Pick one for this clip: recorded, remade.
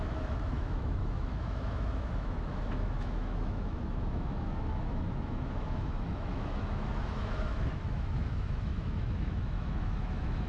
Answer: remade